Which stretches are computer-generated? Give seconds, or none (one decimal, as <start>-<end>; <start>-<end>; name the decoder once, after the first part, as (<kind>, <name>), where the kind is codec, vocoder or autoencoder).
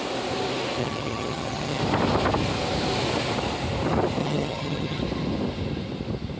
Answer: 0.8-1.8 (vocoder, HiFi-GAN); 4.2-5.0